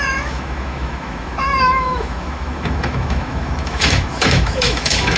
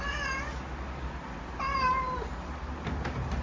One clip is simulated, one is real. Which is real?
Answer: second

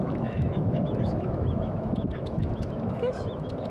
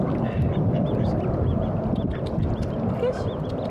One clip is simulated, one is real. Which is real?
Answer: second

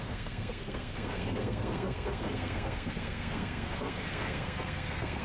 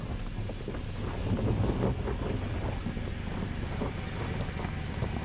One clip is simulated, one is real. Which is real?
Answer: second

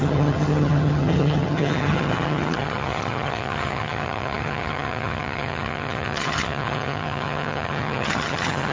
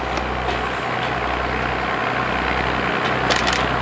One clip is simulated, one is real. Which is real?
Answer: second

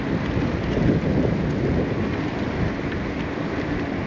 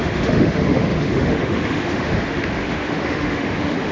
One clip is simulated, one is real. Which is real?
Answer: first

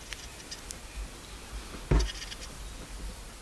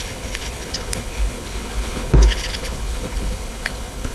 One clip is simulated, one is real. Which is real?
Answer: first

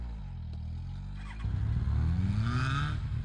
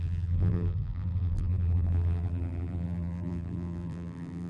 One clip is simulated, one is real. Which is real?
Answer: first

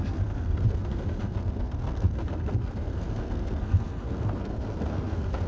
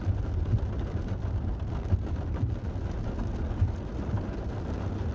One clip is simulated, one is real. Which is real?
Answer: second